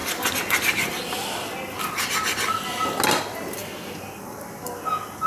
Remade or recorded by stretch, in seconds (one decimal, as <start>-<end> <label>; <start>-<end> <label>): 0.0-5.3 recorded